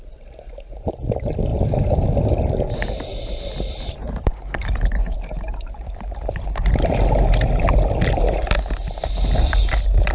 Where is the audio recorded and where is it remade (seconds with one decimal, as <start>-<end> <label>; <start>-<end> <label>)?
0.0-3.1 recorded; 3.1-6.7 remade; 6.7-10.1 recorded